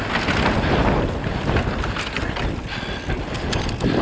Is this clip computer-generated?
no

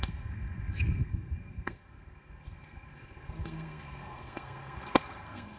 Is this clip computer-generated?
yes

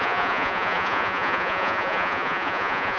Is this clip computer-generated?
yes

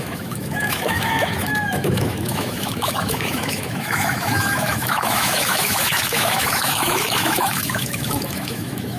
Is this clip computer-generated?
yes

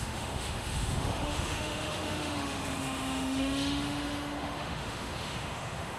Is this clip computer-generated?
yes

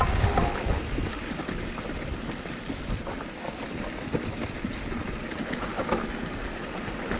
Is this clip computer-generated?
no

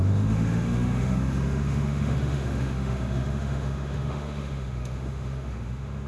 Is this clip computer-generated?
yes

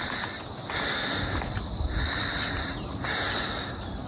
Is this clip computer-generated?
no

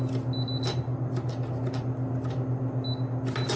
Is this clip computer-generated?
no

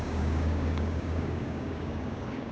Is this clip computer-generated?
yes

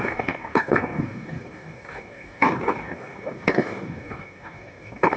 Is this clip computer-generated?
yes